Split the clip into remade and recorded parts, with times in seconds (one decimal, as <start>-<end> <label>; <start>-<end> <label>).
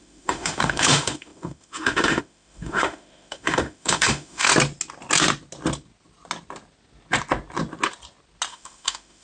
0.0-4.5 remade; 4.5-8.5 recorded; 8.5-9.2 remade